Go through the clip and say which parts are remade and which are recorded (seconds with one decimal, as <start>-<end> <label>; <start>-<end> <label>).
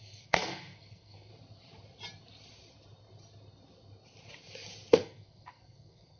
0.0-1.3 remade; 1.3-4.9 recorded; 4.9-6.2 remade